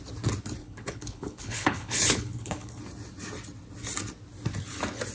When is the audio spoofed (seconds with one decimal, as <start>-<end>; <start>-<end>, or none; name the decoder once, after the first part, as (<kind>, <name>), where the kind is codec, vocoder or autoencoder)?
0.6-2.8 (codec, HILCodec)